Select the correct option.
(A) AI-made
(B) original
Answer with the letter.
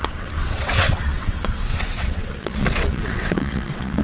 A